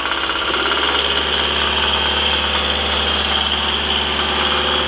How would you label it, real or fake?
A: real